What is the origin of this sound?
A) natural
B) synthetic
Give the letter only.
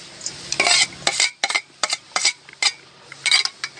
A